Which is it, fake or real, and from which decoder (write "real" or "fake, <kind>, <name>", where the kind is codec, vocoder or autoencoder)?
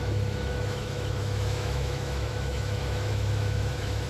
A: fake, autoencoder, DAC-VAE